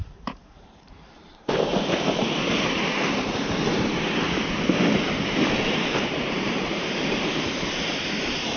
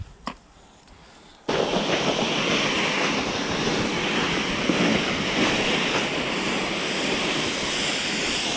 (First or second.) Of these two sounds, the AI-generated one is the first